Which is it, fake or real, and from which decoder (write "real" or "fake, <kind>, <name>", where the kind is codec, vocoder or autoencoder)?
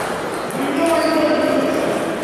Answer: real